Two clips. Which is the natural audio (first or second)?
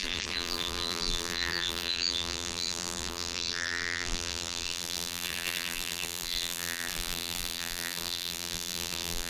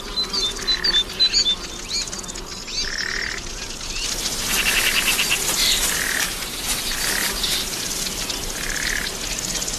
second